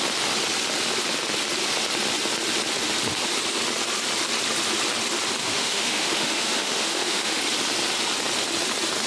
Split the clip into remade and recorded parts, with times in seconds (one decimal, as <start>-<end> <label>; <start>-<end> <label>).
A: 0.0-5.4 recorded; 5.4-7.4 remade; 7.4-9.1 recorded